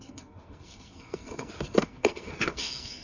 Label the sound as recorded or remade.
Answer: remade